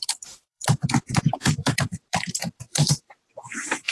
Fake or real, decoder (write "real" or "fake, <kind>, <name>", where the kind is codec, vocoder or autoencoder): fake, vocoder, BigVGAN v2